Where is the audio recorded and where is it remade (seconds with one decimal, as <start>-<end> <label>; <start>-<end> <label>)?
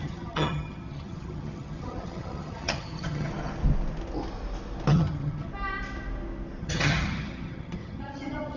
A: 0.0-3.3 remade; 3.3-4.9 recorded; 4.9-5.5 remade; 5.5-6.6 recorded; 6.6-8.6 remade